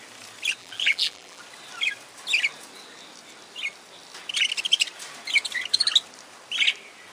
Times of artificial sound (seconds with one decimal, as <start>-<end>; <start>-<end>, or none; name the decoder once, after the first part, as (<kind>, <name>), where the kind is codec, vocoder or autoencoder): 0.6-1.4 (vocoder, BigVGAN v2)